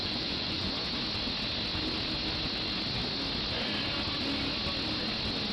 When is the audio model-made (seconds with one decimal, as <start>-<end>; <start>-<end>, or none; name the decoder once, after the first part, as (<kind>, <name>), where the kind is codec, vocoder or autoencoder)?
0.0-0.7 (vocoder, Vocos)

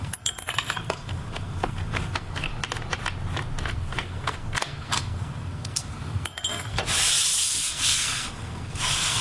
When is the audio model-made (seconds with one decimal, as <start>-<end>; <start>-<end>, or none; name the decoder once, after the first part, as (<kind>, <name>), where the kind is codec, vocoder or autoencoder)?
0.0-2.5 (codec, SNAC); 3.7-6.8; 7.4-9.2